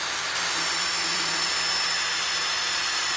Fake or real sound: fake